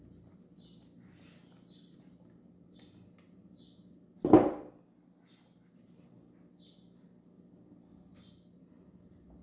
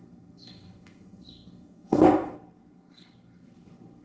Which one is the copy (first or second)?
second